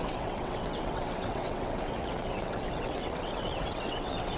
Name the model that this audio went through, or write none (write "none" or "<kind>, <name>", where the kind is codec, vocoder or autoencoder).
vocoder, WaveNeXt